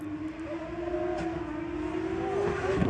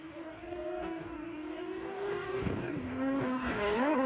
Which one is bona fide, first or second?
first